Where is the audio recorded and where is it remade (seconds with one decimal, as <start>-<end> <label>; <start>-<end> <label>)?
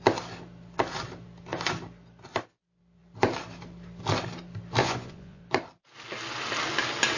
0.0-4.8 recorded; 4.8-5.4 remade; 5.4-7.2 recorded